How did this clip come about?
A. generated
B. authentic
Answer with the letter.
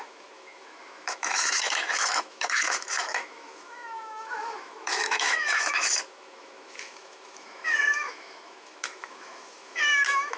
A